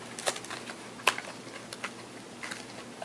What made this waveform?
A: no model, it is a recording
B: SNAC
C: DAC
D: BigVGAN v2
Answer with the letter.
A